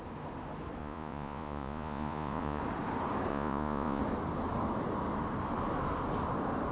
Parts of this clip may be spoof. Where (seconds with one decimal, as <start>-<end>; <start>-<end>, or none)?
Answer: 0.8-2.6; 3.3-4.0